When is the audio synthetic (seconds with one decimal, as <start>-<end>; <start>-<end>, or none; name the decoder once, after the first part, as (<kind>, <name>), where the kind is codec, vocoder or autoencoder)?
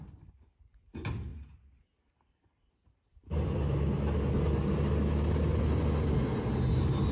none